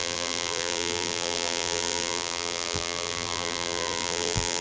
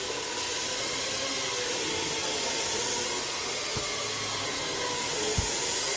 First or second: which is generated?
first